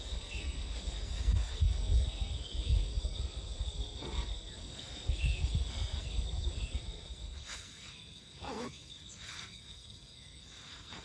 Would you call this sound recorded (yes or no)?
no